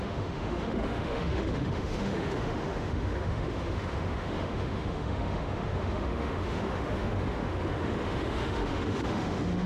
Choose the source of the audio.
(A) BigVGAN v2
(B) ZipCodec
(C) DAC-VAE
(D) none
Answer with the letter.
C